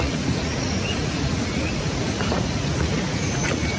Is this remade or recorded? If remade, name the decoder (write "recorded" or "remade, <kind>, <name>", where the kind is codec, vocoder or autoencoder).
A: remade, vocoder, Vocos